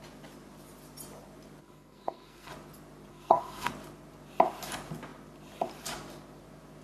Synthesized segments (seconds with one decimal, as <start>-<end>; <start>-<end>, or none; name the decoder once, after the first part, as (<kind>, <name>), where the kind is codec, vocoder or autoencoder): 1.6-2.5 (codec, SNAC); 3.1-3.7